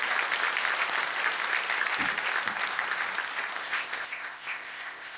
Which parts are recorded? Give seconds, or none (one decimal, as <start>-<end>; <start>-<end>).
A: 0.0-3.6

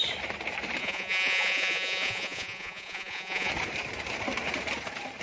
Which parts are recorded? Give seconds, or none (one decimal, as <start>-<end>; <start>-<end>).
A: 0.0-0.8; 3.5-5.2

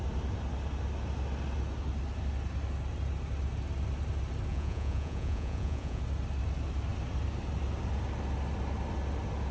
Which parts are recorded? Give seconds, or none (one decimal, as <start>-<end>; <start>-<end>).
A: 0.0-4.5; 6.0-9.5

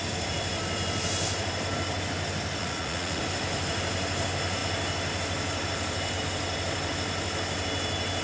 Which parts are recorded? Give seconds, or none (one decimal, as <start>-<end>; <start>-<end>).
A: 0.0-2.6; 3.2-8.2

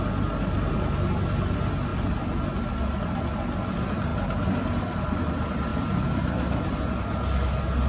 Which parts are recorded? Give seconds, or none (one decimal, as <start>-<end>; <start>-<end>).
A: 0.0-7.9

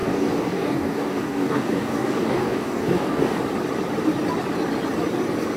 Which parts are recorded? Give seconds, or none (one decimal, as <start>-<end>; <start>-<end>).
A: 3.4-5.6

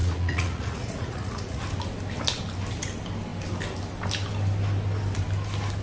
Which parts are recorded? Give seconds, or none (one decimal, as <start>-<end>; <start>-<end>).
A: 1.6-5.8

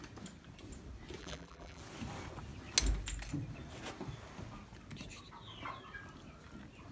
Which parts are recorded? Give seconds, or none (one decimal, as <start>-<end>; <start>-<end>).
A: 0.0-1.2; 1.8-6.9